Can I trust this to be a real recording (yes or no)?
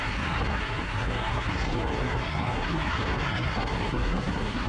no